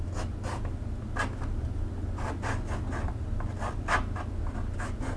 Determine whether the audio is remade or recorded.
recorded